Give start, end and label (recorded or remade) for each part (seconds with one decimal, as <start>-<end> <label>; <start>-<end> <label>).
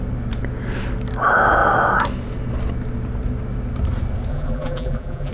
0.0-4.3 recorded; 4.3-5.3 remade